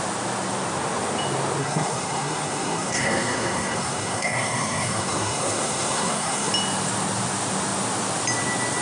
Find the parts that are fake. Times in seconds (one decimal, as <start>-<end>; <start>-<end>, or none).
1.6-6.5